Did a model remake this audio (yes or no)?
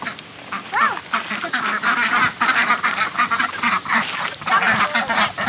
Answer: no